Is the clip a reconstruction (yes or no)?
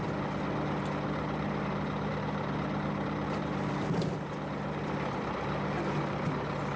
no